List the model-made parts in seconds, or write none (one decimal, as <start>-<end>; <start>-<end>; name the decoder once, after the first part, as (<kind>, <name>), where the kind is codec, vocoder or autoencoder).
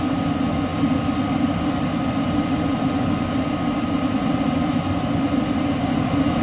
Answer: none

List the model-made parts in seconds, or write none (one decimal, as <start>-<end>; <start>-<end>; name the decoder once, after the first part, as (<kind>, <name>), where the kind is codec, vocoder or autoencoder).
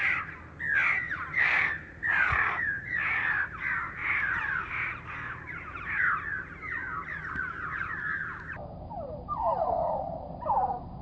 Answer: 2.1-2.7 (vocoder, BigVGAN v2); 4.0-6.2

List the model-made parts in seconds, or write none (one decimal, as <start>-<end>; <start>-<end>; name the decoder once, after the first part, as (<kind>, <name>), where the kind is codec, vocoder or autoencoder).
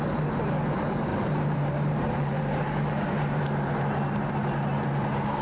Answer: 1.1-3.4 (vocoder, BigVGAN v2)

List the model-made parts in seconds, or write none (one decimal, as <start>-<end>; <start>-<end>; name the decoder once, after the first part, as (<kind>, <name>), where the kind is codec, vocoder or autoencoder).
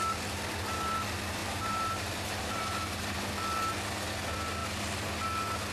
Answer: 1.4-3.3 (vocoder, BigVGAN v2)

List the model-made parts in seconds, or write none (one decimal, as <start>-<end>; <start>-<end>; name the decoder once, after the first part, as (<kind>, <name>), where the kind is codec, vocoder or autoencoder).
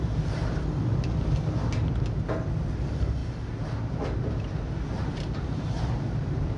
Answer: 0.0-0.4 (vocoder, BigVGAN v2); 2.6-3.2; 5.0-6.6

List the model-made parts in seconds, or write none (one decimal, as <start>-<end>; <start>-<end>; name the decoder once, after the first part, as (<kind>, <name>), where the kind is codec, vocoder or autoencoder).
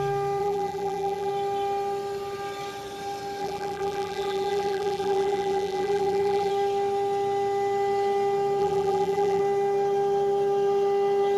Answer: 0.4-1.3 (vocoder, BigVGAN v2); 3.4-6.5; 8.6-9.4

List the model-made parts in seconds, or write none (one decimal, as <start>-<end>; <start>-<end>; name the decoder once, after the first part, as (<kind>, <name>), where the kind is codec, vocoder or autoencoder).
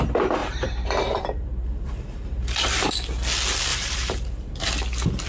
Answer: 0.4-2.7 (vocoder, BigVGAN v2); 3.7-4.5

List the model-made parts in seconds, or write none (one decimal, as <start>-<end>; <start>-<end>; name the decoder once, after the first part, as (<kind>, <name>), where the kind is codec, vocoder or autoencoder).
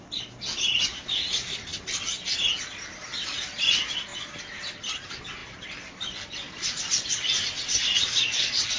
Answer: none